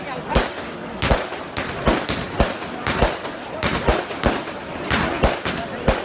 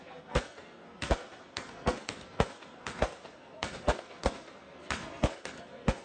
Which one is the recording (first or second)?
first